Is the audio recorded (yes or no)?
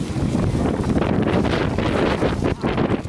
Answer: yes